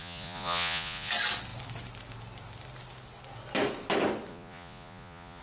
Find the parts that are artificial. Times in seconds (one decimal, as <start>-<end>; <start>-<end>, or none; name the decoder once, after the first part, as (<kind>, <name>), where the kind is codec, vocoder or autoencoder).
0.0-1.1 (vocoder, Vocos); 4.3-5.4